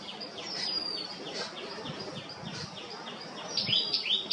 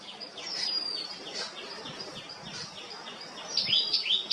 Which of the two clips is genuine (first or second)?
second